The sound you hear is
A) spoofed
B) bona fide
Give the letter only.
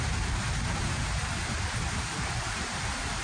A